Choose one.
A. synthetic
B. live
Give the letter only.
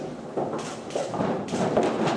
B